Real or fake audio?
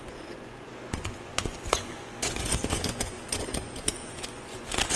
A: fake